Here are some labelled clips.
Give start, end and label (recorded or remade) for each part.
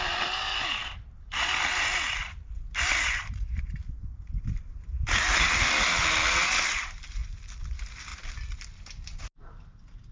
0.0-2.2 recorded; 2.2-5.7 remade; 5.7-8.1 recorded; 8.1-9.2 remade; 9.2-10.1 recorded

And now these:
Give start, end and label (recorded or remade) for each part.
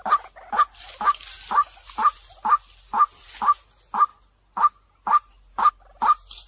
0.0-6.5 recorded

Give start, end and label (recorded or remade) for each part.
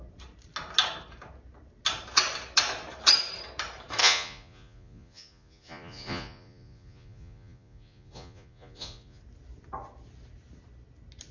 0.0-4.0 recorded; 4.0-9.2 remade; 9.2-11.3 recorded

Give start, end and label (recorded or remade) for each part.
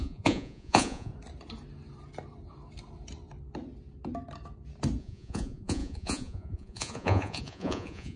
0.0-1.1 remade; 1.1-5.0 recorded; 5.0-8.2 remade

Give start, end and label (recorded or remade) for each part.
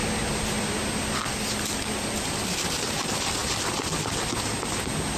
0.0-5.2 recorded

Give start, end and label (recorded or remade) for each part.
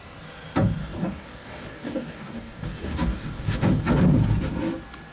0.0-0.8 recorded; 0.8-3.8 remade; 3.8-5.1 recorded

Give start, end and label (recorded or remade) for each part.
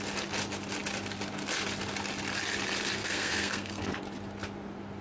0.0-3.0 recorded; 3.0-4.0 remade; 4.0-5.0 recorded